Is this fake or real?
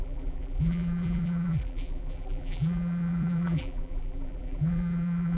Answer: fake